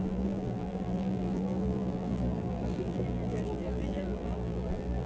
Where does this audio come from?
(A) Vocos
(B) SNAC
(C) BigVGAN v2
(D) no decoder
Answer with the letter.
C